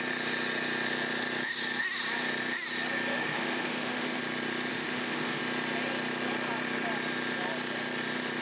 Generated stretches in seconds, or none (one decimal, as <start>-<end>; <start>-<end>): 3.1-4.2; 4.7-5.4